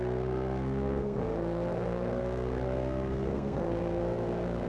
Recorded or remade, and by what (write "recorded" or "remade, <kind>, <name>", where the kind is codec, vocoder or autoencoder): remade, codec, SNAC